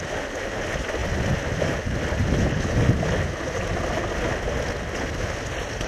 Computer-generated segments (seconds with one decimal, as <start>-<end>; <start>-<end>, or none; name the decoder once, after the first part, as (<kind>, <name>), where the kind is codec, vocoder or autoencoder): none